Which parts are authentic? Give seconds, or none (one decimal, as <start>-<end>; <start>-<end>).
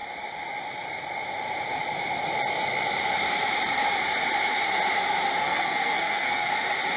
0.0-5.4; 6.5-7.0